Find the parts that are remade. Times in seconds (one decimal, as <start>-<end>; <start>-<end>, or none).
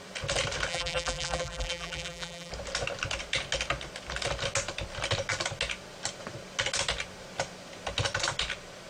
0.7-2.5